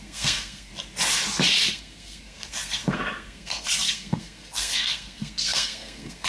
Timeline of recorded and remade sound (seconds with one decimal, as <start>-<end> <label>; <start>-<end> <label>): 0.0-0.7 remade; 0.7-1.7 recorded; 1.7-6.3 remade

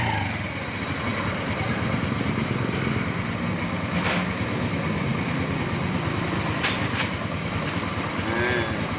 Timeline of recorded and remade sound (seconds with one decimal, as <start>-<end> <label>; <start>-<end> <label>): 0.0-9.0 recorded

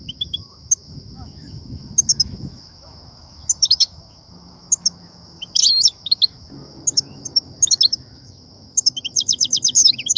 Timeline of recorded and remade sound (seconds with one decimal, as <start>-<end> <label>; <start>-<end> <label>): 0.0-10.2 remade

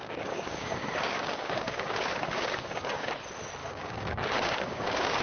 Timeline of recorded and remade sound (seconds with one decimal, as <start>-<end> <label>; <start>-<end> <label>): 0.0-3.1 remade; 3.1-3.6 recorded; 3.6-5.2 remade

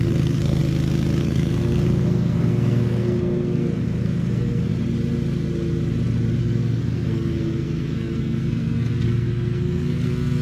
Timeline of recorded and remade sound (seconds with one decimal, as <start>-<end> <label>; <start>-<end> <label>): 0.0-0.6 remade; 0.6-1.2 recorded; 1.2-4.7 remade; 4.7-6.4 recorded; 6.4-10.4 remade

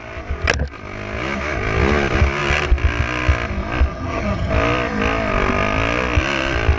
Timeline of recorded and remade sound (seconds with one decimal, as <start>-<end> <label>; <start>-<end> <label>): 0.0-3.9 recorded; 3.9-4.5 remade; 4.5-6.8 recorded

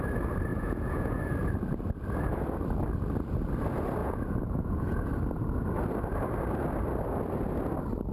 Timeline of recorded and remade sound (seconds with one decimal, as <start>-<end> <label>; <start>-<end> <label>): 0.0-0.5 recorded; 0.5-1.2 remade; 1.2-4.0 recorded; 4.0-5.1 remade; 5.1-8.1 recorded

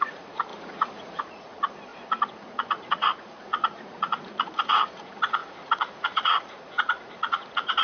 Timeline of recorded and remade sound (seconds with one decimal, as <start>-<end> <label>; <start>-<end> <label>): 0.0-7.8 remade